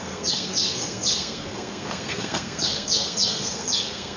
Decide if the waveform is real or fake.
fake